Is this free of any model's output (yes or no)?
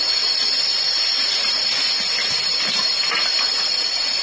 yes